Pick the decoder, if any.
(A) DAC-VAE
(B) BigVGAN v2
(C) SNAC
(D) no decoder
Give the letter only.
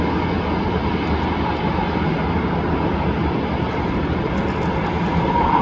D